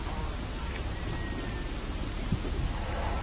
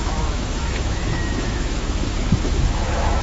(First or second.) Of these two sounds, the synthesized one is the second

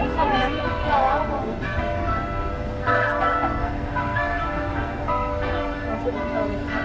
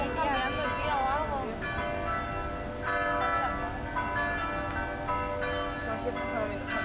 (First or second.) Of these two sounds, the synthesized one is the first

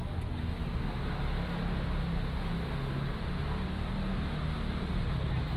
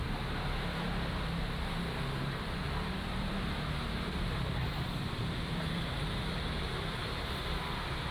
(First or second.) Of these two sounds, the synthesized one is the second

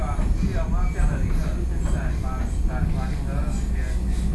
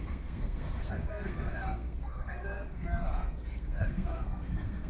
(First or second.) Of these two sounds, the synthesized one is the second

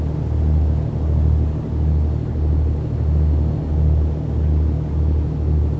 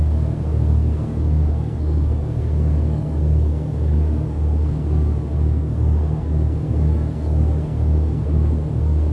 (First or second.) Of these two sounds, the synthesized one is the second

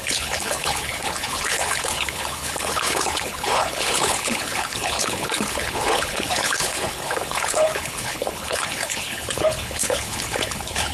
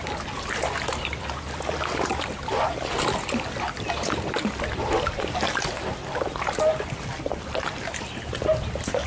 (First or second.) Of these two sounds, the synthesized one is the first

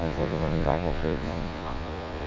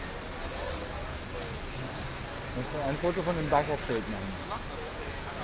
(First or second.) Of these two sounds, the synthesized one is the first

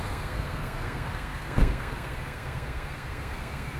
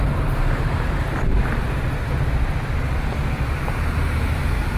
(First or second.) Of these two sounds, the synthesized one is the first